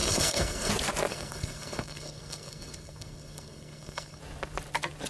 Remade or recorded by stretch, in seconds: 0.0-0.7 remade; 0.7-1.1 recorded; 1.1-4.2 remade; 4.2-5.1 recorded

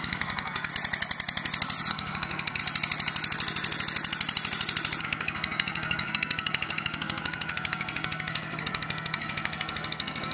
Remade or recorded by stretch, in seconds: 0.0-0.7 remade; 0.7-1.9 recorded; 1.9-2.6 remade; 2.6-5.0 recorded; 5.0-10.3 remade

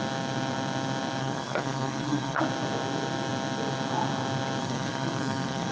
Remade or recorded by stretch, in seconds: 0.0-1.2 recorded; 1.2-2.4 remade; 2.4-4.6 recorded; 4.6-5.7 remade